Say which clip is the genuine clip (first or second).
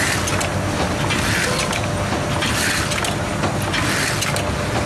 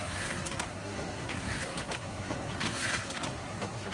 first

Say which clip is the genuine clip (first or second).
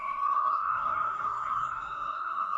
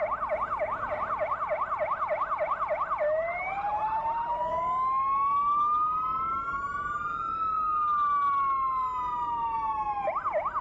second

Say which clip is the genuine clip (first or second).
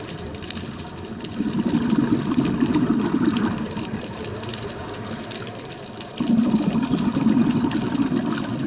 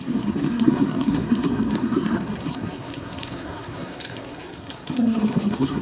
first